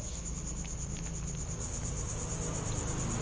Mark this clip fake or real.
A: real